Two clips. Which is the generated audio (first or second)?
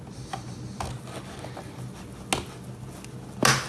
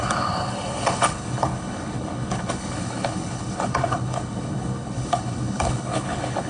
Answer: second